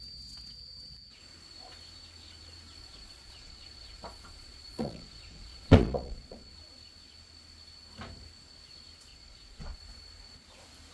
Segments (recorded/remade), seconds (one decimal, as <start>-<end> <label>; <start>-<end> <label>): 0.0-2.8 recorded; 2.8-6.5 remade; 6.5-9.1 recorded; 9.1-9.8 remade; 9.8-10.9 recorded